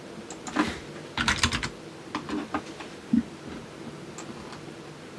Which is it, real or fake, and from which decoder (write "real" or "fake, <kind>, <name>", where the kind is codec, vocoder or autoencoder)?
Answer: real